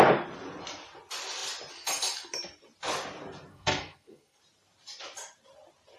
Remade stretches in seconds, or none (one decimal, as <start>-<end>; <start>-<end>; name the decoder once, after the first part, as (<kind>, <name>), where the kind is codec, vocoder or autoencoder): 3.5-4.4 (codec, SNAC)